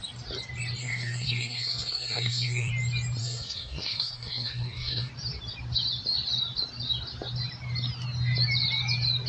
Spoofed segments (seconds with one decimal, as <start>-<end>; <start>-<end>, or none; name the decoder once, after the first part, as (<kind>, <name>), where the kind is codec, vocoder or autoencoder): 0.8-2.7 (codec, SNAC); 3.2-5.1